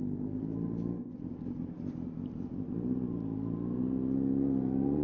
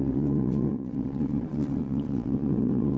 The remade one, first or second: second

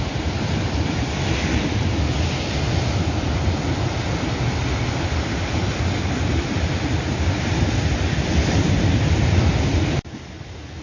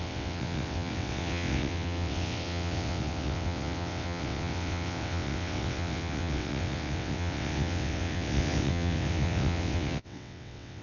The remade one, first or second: second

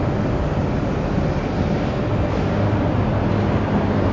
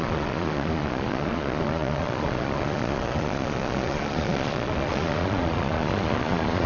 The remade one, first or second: second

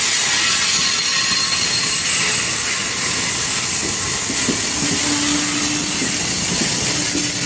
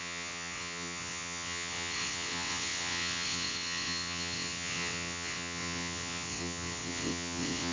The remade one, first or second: second